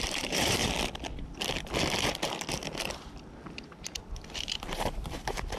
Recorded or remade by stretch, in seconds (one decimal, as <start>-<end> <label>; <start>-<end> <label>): 0.0-0.6 remade; 0.6-4.0 recorded; 4.0-5.6 remade